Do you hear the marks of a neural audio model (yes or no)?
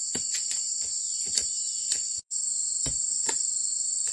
yes